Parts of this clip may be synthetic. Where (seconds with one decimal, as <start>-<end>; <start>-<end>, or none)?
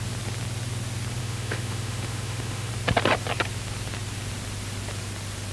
1.2-2.7